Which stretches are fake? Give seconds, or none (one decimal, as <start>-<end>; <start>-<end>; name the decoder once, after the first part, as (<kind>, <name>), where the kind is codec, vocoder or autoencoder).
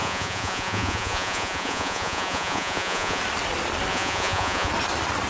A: 0.0-3.2 (vocoder, Vocos); 3.9-4.7